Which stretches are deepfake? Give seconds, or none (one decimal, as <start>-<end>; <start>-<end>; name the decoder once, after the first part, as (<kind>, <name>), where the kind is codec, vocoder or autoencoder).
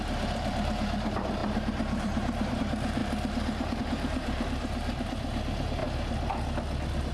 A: 0.0-5.8 (vocoder, BigVGAN v2)